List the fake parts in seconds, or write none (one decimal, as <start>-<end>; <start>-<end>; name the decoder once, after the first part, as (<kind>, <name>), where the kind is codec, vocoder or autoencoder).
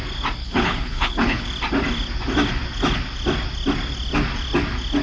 0.4-1.5 (codec, HILCodec)